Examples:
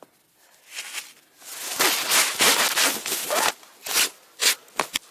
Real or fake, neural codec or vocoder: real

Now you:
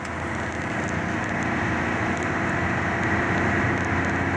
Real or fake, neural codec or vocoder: real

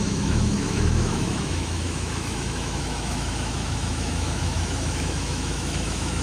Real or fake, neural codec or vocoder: fake, autoencoder, DAC-VAE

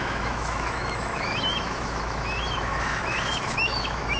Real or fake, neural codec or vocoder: fake, autoencoder, DAC-VAE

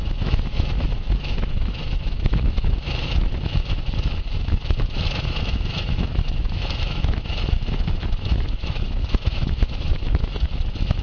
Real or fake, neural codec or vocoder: fake, autoencoder, DAC-VAE